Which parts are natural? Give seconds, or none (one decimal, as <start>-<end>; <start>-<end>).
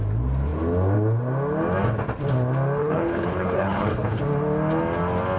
0.0-2.8; 4.2-5.4